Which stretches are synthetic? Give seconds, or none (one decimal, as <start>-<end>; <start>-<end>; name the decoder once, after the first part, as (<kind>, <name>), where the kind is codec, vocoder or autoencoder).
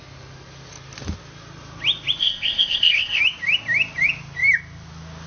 2.2-3.2 (codec, ZipCodec)